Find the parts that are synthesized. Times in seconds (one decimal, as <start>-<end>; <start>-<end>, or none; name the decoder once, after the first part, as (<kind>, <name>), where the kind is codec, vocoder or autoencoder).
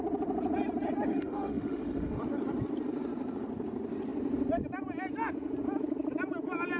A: 1.1-2.2 (autoencoder, DAC-VAE)